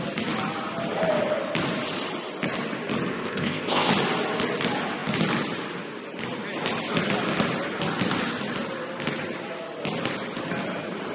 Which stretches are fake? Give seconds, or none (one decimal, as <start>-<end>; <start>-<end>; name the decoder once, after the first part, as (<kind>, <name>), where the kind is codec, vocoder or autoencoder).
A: 3.1-3.9 (codec, ZipCodec)